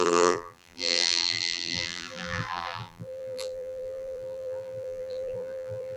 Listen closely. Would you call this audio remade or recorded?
remade